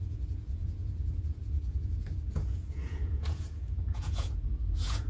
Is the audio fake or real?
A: fake